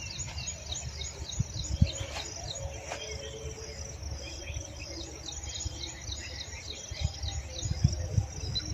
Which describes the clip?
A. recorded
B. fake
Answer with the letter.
A